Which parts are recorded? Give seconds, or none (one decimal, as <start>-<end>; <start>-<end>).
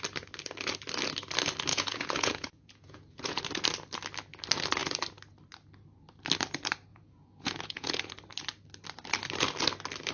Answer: 0.0-1.7; 3.4-6.9; 8.1-10.1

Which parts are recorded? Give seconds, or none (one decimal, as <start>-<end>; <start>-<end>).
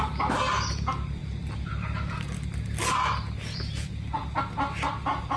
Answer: 0.0-5.4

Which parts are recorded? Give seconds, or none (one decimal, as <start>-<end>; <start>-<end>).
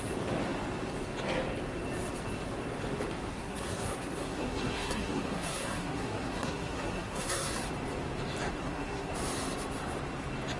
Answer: 0.0-3.3; 7.7-8.6; 9.1-10.6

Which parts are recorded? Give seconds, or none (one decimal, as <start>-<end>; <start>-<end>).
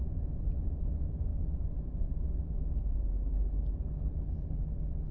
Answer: 0.0-1.3; 3.1-5.1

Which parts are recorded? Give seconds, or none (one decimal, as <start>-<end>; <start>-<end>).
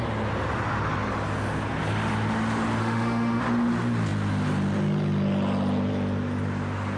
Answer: 0.0-2.8; 3.4-7.0